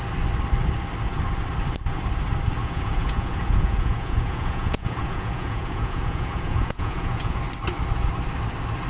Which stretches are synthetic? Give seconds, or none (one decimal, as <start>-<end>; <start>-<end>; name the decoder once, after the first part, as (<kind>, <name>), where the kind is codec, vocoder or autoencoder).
2.6-7.4 (vocoder, Vocos)